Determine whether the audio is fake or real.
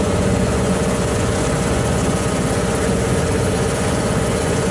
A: fake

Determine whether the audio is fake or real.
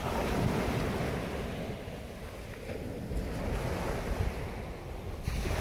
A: real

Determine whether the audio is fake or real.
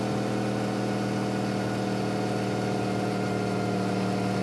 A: real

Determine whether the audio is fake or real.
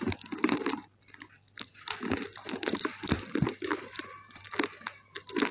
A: real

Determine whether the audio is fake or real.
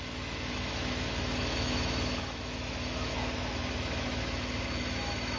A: fake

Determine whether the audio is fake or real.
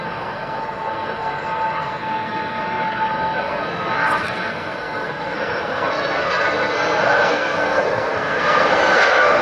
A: fake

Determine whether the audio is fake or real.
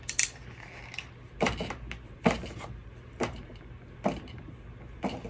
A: real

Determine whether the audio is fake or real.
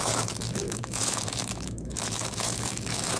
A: fake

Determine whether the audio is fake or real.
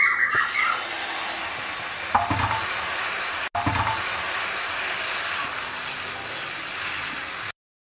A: real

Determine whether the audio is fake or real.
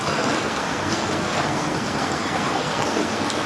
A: fake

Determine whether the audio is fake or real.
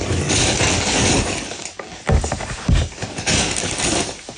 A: fake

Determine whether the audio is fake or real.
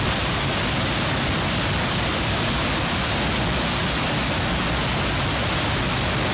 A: real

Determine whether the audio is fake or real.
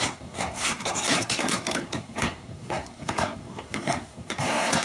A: fake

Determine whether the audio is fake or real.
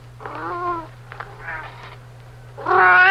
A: real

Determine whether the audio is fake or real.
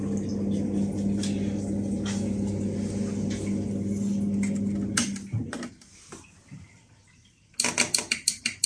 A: real